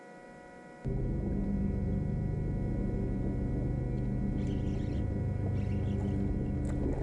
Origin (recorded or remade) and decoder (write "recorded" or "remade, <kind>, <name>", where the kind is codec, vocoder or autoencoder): recorded